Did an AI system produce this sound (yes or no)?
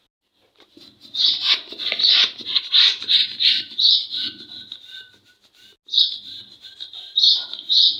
no